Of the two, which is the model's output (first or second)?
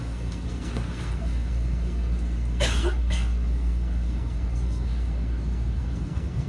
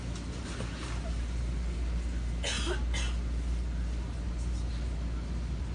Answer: first